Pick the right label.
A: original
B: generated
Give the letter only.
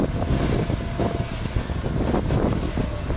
A